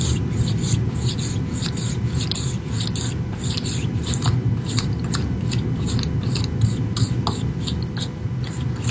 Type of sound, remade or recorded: recorded